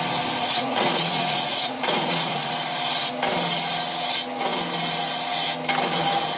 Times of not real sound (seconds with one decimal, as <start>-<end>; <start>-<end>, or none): 0.4-2.5